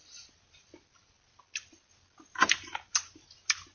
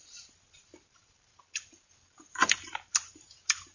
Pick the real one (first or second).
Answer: first